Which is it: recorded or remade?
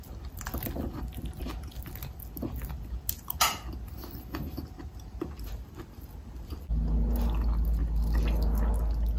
recorded